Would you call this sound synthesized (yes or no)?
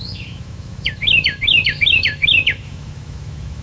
yes